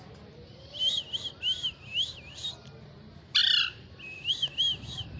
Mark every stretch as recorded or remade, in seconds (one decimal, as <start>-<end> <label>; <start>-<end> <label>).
0.0-5.2 recorded